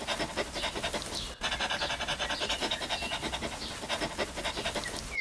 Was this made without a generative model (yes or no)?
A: yes